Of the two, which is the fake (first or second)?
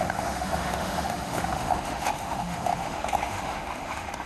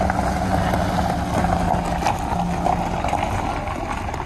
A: first